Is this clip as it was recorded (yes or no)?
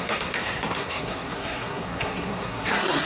no